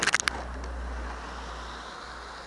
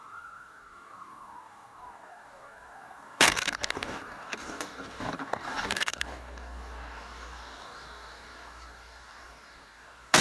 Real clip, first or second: first